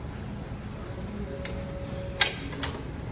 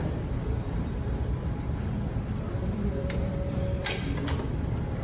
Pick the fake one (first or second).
second